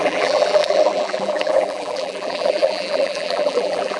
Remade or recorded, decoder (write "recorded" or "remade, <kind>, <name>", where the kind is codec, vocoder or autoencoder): remade, vocoder, BigVGAN v2